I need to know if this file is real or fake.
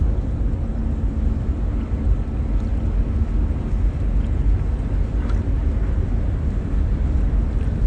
real